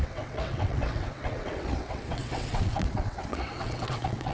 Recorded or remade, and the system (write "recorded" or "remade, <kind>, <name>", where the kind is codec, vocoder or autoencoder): remade, vocoder, WaveNeXt